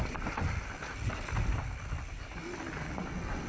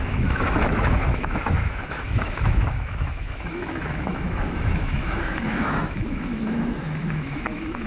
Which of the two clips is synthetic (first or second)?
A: second